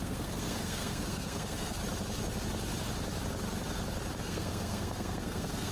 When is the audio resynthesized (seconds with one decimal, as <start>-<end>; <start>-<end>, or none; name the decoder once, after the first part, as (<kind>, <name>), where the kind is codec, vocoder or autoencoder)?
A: 0.0-1.8 (codec, SNAC); 4.2-5.7